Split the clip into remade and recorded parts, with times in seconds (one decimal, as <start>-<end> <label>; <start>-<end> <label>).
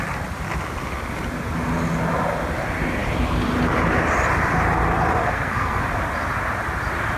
0.0-5.1 recorded; 5.1-5.8 remade; 5.8-7.2 recorded